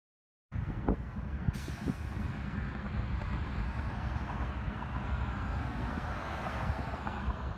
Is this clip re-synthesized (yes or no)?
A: yes